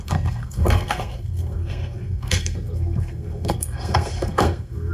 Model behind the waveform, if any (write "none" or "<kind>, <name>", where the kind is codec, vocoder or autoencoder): codec, SNAC